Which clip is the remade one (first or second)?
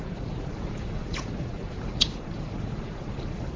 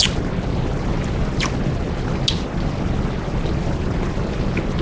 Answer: first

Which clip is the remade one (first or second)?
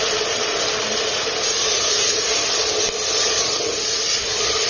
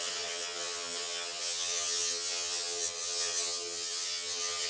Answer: second